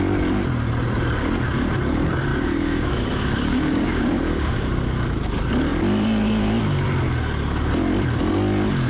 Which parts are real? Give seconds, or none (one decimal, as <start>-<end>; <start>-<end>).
0.0-2.3; 4.8-8.9